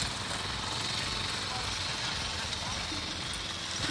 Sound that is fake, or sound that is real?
real